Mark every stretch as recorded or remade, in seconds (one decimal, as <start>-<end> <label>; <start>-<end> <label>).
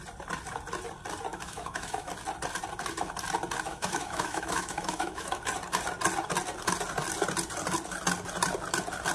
0.0-1.3 recorded; 1.3-2.1 remade; 2.1-3.7 recorded; 3.7-5.4 remade; 5.4-9.1 recorded